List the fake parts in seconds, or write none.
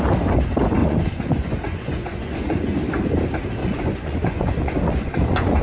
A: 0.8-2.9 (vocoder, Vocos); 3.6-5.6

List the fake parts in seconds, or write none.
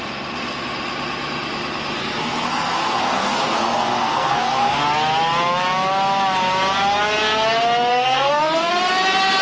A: 2.0-4.8 (codec, SNAC); 7.9-8.7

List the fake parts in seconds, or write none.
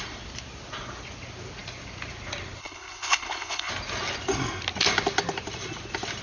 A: 2.6-3.7 (codec, HILCodec)